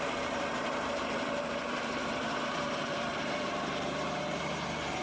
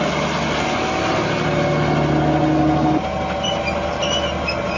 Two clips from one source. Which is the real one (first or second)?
second